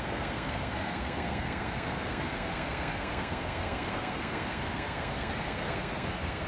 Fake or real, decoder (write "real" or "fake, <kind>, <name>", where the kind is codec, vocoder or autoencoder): fake, codec, SNAC